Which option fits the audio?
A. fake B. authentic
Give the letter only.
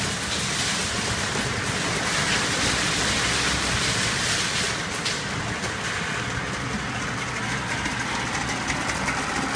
B